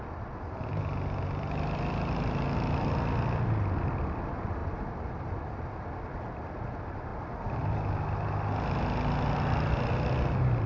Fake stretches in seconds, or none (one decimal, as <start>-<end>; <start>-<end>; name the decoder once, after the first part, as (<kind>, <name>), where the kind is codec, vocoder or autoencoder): none